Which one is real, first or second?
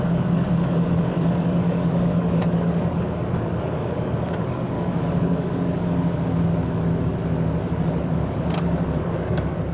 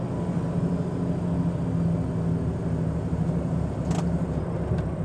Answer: second